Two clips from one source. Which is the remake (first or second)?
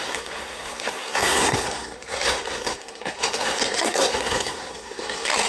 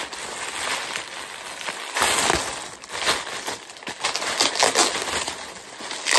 first